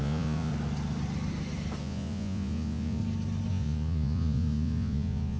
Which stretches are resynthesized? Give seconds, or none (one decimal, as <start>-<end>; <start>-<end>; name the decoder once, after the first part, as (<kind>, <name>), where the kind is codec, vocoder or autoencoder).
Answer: 0.0-0.5 (vocoder, Vocos); 1.8-3.0; 3.5-5.4